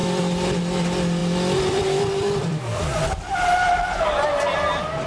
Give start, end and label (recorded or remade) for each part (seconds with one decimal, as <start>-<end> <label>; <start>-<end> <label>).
0.0-1.2 recorded; 1.2-2.8 remade; 2.8-5.1 recorded